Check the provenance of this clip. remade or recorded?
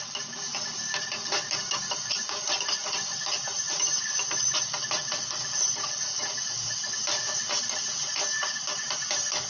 recorded